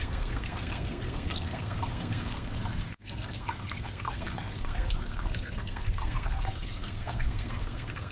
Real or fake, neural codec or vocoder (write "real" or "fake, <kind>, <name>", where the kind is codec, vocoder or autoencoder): fake, codec, SNAC